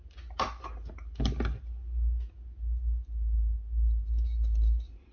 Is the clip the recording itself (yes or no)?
yes